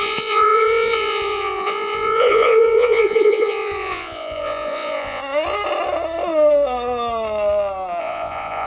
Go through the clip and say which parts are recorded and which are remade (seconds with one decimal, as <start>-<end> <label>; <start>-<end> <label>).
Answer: 0.0-5.2 remade; 5.2-8.0 recorded; 8.0-8.7 remade